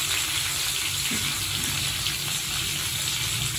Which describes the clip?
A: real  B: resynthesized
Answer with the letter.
A